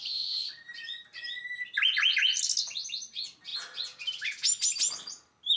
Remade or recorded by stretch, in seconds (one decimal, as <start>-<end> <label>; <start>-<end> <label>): 0.0-5.6 recorded